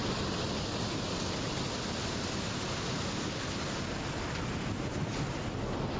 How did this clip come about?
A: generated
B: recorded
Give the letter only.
B